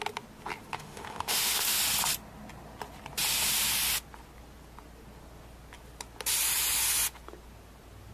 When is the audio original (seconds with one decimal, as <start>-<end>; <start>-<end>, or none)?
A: 0.0-0.7; 1.8-8.1